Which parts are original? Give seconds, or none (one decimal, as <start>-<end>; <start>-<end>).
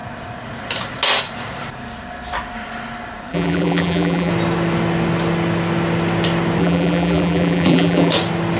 0.0-3.3; 4.3-6.6; 8.1-8.6